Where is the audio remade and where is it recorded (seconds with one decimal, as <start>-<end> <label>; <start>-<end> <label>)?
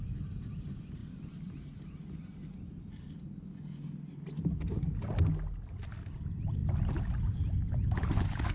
0.0-8.5 recorded